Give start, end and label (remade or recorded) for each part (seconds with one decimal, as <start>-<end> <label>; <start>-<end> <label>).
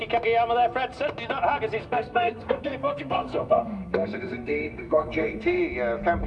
0.0-1.8 recorded; 1.8-5.6 remade; 5.6-6.3 recorded